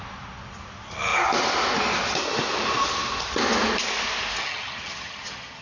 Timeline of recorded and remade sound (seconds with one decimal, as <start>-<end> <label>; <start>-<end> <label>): 0.0-4.4 recorded; 4.4-5.6 remade